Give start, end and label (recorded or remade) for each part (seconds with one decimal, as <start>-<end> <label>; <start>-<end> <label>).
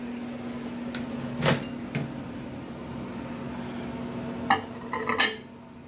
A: 0.0-5.9 recorded